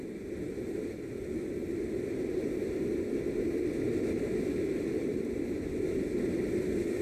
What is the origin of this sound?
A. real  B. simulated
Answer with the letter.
A